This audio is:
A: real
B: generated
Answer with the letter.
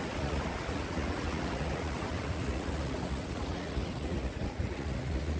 B